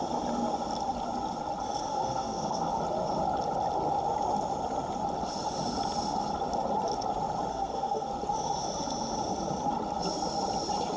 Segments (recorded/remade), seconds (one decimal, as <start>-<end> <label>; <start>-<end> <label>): 0.0-1.9 recorded; 1.9-2.7 remade; 2.7-7.5 recorded; 7.5-8.1 remade; 8.1-11.0 recorded